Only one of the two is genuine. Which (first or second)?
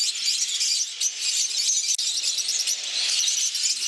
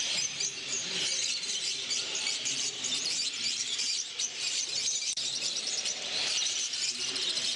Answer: first